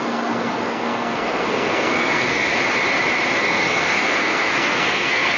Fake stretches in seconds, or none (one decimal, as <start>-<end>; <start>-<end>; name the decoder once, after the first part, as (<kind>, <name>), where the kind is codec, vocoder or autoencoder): 0.0-2.6 (codec, SNAC); 3.4-5.4